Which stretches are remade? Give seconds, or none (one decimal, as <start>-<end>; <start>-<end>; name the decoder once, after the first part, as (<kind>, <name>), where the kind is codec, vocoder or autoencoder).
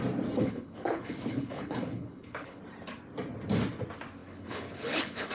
0.4-2.6 (codec, HILCodec); 4.2-5.3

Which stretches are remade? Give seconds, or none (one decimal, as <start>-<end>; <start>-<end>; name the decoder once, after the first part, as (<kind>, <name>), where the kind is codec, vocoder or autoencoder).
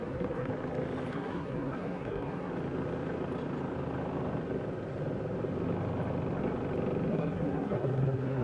0.0-0.5 (codec, SNAC); 1.1-2.5; 7.1-8.4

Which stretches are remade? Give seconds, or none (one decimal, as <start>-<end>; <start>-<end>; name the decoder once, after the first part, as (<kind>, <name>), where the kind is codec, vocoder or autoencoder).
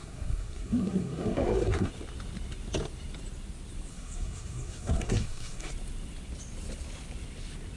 0.0-1.9 (codec, SNAC); 3.9-5.7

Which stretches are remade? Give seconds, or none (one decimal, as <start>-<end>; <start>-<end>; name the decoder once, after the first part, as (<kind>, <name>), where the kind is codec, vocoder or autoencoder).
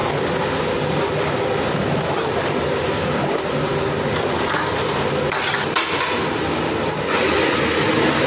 2.8-3.7 (codec, DAC)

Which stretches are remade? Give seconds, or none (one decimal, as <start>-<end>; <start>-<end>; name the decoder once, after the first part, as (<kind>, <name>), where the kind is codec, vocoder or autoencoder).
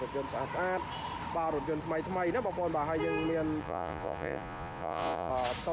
3.6-5.3 (vocoder, Vocos)